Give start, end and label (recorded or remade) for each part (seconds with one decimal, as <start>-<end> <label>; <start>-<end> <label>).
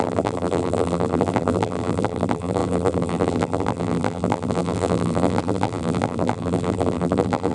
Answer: 0.0-7.5 remade